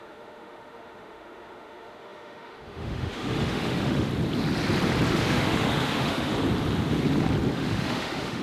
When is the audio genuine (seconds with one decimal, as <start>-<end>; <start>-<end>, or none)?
4.1-5.1; 6.3-7.5